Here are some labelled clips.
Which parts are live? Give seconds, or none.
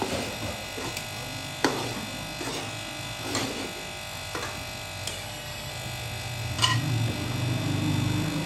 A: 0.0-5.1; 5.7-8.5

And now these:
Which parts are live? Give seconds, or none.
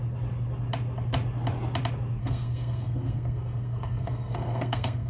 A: 0.0-2.2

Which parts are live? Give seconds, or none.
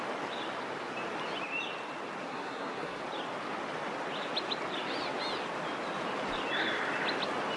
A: 0.0-2.3; 3.0-7.6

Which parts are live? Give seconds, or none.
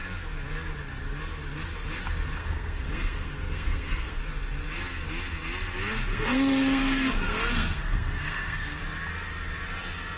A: 0.0-2.4; 4.2-6.1; 8.8-10.2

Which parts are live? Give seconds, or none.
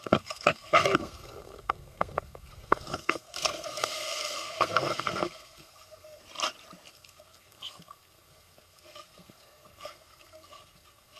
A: 6.2-6.9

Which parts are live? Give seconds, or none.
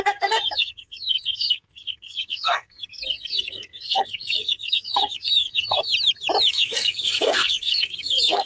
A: 5.9-6.5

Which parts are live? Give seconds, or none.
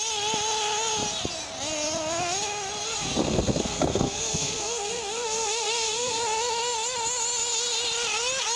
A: 0.0-3.2; 6.2-8.6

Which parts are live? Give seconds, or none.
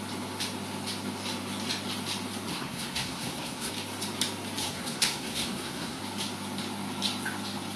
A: 0.0-2.5; 3.7-4.6; 6.0-7.8